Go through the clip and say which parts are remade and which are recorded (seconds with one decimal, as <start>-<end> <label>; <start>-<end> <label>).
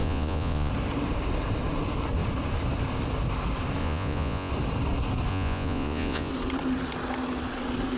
0.0-0.7 remade; 0.7-3.8 recorded; 3.8-4.5 remade; 4.5-5.3 recorded; 5.3-6.3 remade; 6.3-8.0 recorded